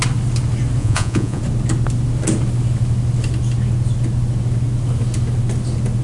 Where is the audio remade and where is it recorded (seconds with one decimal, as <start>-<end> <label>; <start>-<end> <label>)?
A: 0.0-0.8 recorded; 0.8-1.4 remade; 1.4-6.0 recorded